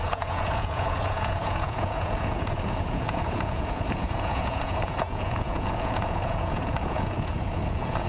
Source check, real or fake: fake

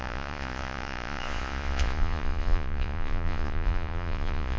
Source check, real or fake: fake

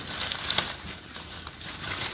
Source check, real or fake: real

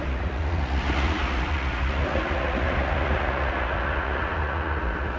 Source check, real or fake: fake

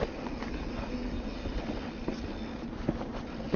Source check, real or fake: real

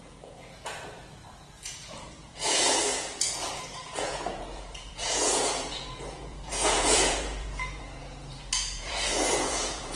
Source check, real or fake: fake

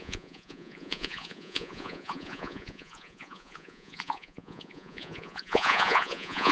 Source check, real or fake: fake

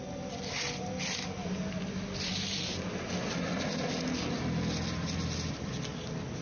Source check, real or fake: real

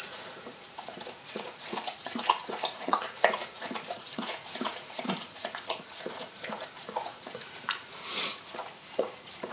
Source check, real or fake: fake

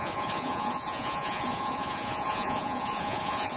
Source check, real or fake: fake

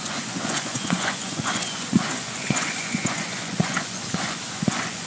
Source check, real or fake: fake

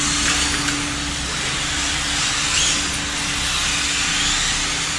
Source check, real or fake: real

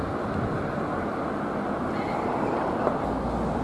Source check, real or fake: real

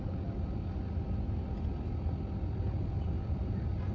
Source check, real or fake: real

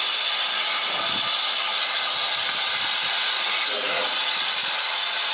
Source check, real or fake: real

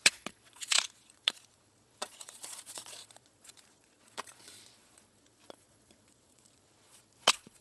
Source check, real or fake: fake